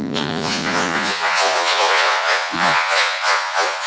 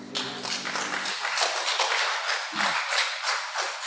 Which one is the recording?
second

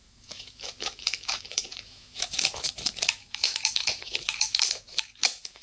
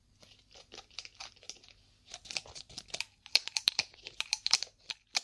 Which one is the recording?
second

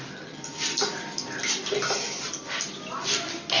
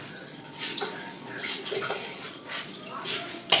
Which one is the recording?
first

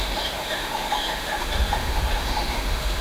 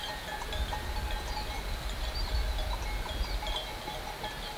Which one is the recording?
second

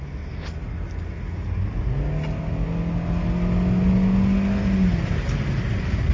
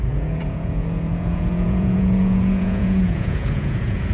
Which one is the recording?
first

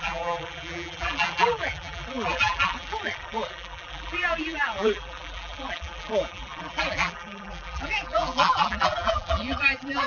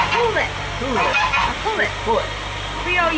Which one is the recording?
second